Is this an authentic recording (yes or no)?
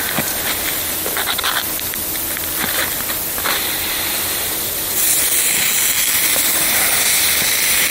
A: yes